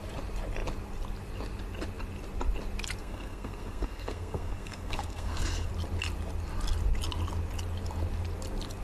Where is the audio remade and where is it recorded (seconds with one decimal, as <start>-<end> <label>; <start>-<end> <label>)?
0.0-3.0 recorded; 3.0-5.7 remade; 5.7-8.8 recorded